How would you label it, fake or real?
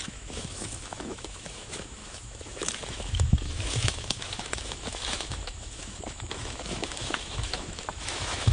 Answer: fake